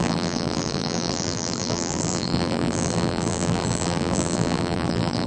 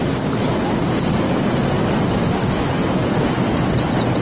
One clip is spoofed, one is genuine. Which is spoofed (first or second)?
first